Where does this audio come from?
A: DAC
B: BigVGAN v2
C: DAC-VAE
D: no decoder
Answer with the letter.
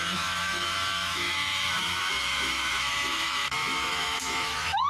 C